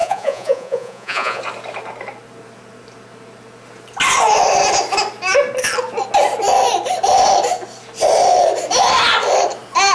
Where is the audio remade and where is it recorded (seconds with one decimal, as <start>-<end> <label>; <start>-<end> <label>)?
0.0-1.4 remade; 1.4-9.9 recorded